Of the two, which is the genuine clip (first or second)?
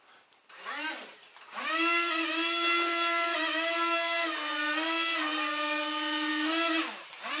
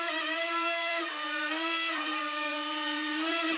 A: first